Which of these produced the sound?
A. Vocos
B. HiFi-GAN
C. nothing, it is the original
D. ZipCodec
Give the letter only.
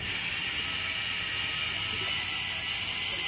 C